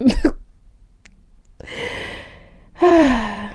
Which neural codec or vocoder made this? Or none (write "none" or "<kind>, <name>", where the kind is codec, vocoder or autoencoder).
vocoder, BigVGAN v2